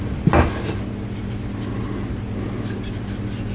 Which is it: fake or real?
real